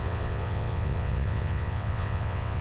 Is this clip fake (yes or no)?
yes